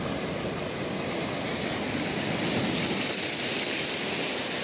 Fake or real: real